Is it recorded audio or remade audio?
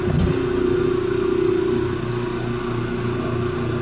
recorded